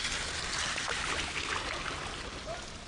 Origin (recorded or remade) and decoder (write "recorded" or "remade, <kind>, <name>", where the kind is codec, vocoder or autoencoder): recorded